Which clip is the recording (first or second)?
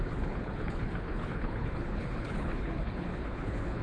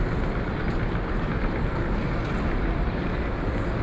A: second